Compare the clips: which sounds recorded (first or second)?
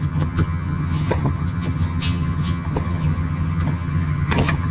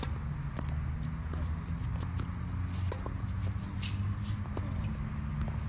second